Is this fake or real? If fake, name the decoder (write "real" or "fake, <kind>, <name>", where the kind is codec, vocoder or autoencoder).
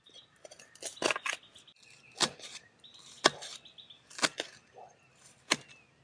real